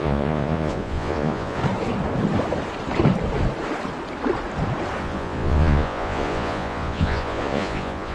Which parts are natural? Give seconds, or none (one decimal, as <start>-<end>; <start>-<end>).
1.6-5.0